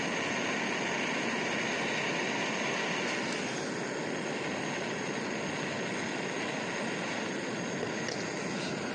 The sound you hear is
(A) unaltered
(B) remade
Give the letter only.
A